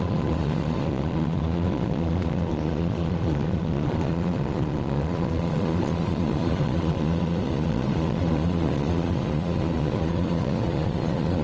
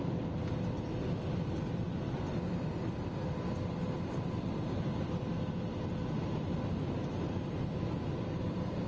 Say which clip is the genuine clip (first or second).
second